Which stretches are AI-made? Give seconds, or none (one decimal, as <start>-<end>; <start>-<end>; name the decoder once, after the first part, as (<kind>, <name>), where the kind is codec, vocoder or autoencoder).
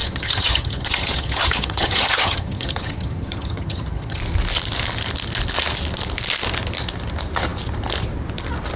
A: 0.0-4.2 (vocoder, HiFi-GAN)